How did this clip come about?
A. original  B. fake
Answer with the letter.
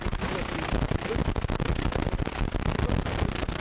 A